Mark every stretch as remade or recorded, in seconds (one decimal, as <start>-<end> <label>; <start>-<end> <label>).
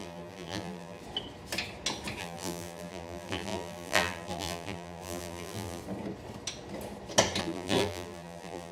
0.0-1.0 remade; 1.0-2.2 recorded; 2.2-5.8 remade; 5.8-7.4 recorded; 7.4-8.7 remade